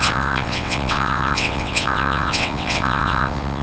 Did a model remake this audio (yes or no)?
yes